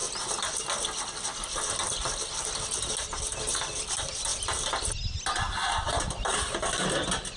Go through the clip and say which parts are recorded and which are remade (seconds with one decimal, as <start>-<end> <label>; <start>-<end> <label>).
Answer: 0.0-7.4 recorded